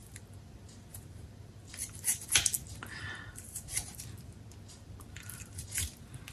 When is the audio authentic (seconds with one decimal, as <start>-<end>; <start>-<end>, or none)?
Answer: 2.5-3.0; 3.7-4.7